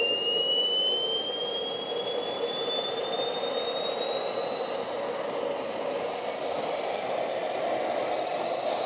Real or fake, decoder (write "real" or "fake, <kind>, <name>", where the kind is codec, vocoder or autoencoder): real